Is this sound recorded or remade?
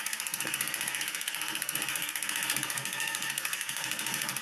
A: remade